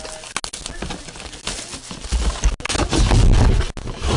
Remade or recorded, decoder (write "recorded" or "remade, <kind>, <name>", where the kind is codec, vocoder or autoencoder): recorded